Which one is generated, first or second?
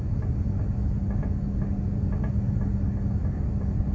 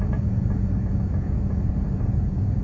second